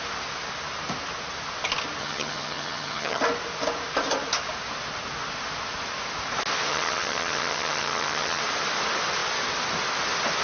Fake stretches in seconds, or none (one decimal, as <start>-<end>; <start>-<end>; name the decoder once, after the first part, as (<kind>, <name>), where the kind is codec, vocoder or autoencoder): 2.0-3.2 (vocoder, HiFi-GAN); 6.7-8.4